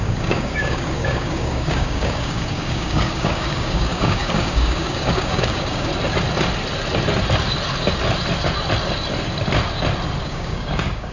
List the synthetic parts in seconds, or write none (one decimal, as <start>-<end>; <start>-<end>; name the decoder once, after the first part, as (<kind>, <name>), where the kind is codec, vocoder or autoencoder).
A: 0.0-5.9 (codec, DAC); 10.2-11.1